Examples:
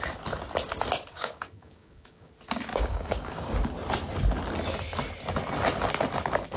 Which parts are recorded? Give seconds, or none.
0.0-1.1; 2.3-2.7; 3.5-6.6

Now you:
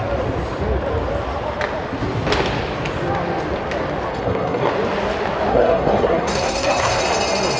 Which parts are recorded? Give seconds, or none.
0.0-4.1; 4.7-5.5; 7.0-7.6

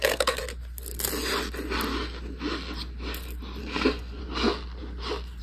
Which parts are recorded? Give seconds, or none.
0.4-3.6; 4.2-5.4

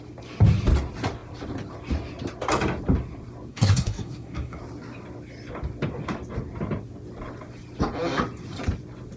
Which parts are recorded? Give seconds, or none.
0.0-3.5; 4.6-9.2

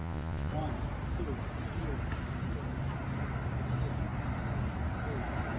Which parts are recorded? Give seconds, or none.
0.5-5.6

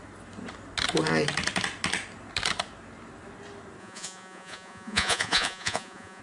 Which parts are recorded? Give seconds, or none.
0.0-3.8